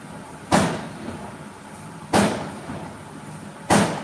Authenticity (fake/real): real